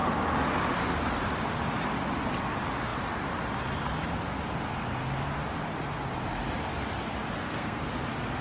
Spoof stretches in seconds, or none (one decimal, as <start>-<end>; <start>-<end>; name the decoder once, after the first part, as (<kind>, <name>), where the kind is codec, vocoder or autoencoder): 7.4-7.9 (codec, SNAC)